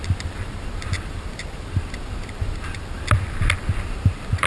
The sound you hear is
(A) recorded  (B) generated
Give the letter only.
B